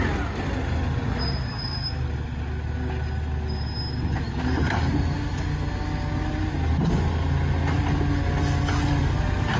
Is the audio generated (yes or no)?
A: no